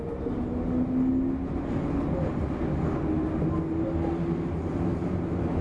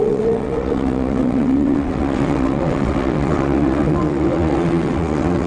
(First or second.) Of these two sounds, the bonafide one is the first